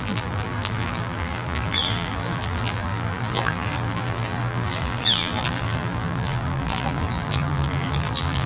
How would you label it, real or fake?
fake